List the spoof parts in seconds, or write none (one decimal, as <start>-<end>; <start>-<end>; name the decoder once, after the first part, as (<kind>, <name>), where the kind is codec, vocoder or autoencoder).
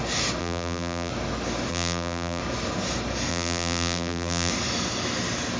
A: 0.4-1.1 (vocoder, BigVGAN v2); 1.7-2.4; 3.3-4.5